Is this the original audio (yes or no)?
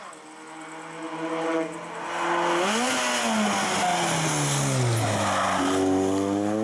yes